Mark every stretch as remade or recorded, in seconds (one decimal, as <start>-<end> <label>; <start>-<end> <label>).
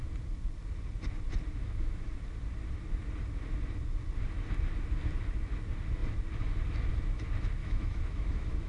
0.0-1.6 recorded; 1.6-2.2 remade; 2.2-7.6 recorded; 7.6-8.7 remade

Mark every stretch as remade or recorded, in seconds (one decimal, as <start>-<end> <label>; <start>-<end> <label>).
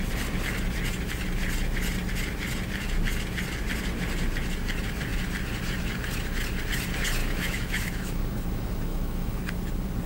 0.0-7.2 recorded; 7.2-8.2 remade; 8.2-8.9 recorded; 8.9-9.4 remade; 9.4-10.1 recorded